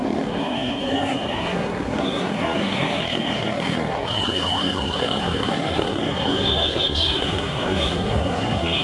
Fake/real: fake